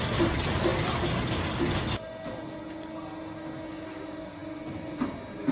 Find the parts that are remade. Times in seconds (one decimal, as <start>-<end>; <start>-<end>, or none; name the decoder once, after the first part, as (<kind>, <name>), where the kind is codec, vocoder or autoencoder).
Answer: none